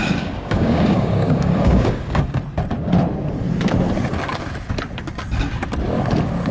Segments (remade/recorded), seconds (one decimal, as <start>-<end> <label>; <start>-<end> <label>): 0.0-2.4 remade; 2.4-6.5 recorded